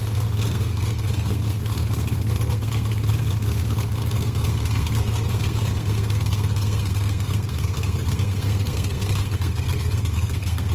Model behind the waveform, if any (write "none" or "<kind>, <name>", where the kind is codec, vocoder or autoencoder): codec, SNAC